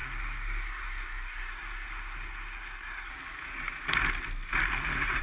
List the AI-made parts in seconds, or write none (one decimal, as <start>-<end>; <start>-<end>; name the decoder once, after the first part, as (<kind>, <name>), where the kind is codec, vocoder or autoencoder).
0.0-3.1 (codec, SNAC); 4.7-5.2